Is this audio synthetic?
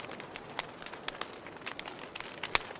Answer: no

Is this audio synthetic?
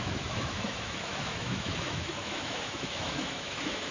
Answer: yes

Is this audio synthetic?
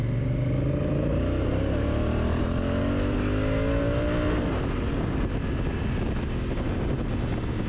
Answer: no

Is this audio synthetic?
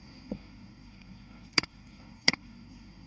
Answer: yes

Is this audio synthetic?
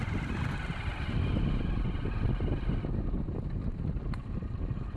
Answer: no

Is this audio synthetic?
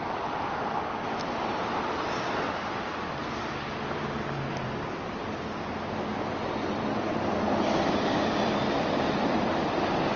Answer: no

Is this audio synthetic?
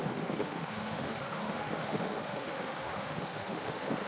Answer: yes